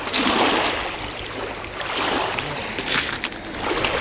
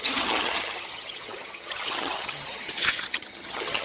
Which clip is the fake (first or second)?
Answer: second